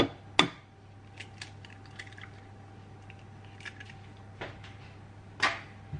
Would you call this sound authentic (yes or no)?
yes